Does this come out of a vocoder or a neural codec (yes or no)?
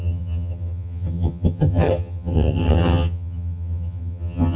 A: yes